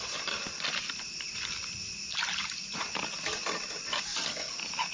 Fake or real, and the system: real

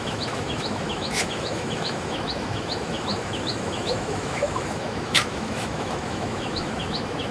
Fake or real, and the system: fake, autoencoder, DAC-VAE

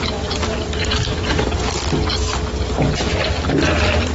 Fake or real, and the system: real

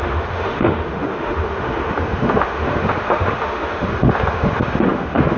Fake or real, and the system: fake, autoencoder, DAC-VAE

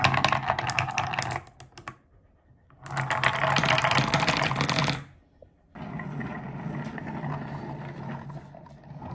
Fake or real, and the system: real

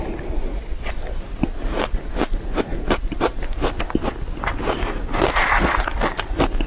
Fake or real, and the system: real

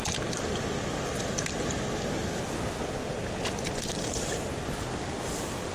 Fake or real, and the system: real